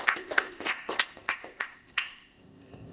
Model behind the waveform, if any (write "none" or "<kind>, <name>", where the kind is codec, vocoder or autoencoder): codec, ZipCodec